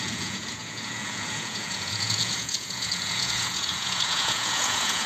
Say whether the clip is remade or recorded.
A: remade